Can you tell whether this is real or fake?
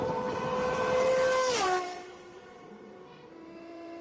fake